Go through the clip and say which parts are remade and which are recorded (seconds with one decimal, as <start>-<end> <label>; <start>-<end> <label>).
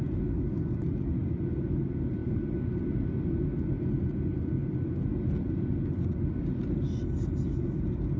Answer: 0.0-8.2 recorded